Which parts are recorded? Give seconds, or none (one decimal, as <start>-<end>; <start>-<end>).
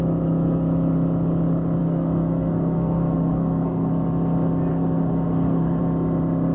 0.0-1.8; 3.9-4.7; 5.8-6.5